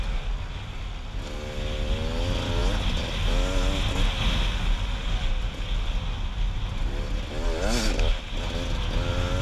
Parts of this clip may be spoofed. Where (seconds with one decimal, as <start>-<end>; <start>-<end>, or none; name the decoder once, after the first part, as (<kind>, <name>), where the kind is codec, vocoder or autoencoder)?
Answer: none